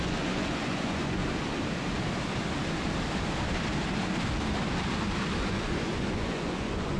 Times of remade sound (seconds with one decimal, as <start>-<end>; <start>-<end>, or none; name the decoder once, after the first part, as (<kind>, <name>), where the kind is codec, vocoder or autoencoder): 0.0-1.2 (vocoder, Vocos); 5.4-7.0